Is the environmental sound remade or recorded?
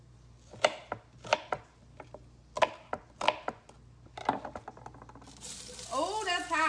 recorded